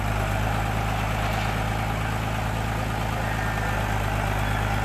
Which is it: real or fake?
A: real